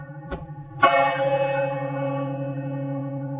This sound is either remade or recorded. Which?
remade